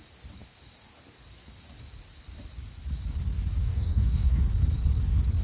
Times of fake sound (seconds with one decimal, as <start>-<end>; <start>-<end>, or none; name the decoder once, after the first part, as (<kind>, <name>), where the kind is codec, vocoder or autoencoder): 3.6-4.4 (codec, DAC)